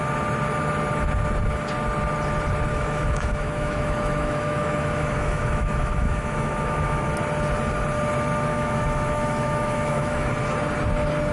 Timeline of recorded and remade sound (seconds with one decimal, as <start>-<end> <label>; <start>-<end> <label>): 0.0-2.7 recorded; 2.7-7.1 remade; 7.1-8.5 recorded; 8.5-10.3 remade; 10.3-11.3 recorded